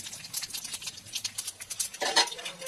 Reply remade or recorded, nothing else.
recorded